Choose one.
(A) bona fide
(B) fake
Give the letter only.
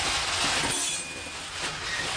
A